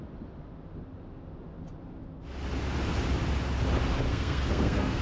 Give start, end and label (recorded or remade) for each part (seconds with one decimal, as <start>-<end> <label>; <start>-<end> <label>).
0.0-4.1 recorded; 4.1-5.0 remade